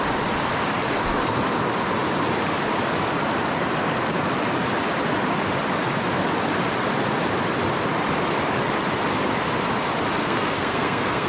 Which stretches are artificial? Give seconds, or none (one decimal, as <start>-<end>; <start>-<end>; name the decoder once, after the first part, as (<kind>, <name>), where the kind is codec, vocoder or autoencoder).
10.2-11.3 (codec, SNAC)